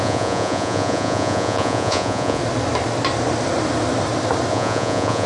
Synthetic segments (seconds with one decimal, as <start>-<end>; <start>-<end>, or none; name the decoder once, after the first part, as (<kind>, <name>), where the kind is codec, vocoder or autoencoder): 0.0-2.4 (vocoder, Vocos); 4.5-5.3